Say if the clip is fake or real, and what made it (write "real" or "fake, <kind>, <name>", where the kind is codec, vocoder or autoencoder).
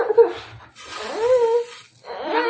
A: real